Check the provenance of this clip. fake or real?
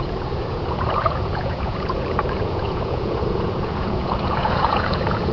fake